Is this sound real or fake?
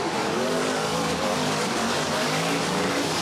fake